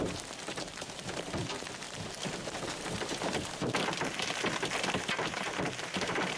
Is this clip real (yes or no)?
no